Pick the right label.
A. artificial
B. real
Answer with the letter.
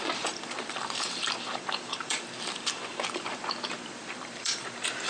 A